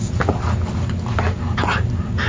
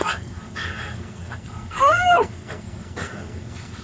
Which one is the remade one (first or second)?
second